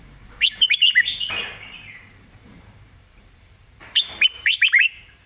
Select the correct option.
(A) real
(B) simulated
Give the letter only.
B